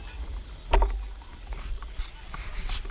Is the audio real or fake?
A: real